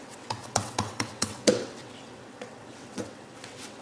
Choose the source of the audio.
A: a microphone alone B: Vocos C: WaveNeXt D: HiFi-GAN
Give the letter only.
C